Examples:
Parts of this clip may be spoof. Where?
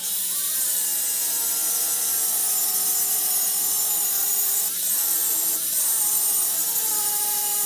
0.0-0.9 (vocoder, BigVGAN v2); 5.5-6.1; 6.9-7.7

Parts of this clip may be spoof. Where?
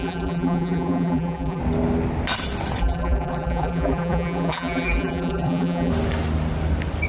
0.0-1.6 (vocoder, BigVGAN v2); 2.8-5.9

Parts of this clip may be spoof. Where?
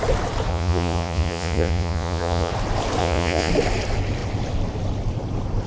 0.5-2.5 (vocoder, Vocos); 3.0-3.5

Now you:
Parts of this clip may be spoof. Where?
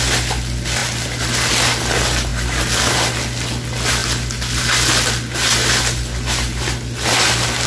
none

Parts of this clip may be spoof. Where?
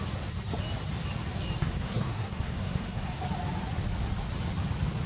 1.6-3.2 (codec, SNAC)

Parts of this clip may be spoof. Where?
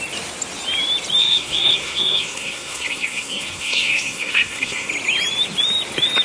1.2-4.9 (codec, SNAC)